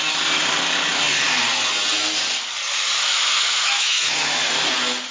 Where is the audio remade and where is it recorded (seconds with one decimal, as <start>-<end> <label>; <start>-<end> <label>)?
0.0-3.1 recorded; 3.1-4.5 remade; 4.5-5.1 recorded